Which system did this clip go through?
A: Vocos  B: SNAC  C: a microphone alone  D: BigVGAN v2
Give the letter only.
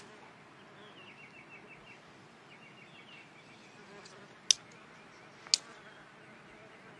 C